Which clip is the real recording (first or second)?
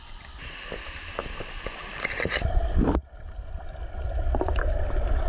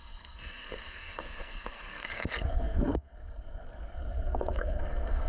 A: first